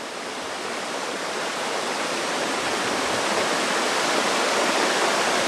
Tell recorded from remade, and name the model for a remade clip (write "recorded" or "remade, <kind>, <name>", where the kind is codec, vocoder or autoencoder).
recorded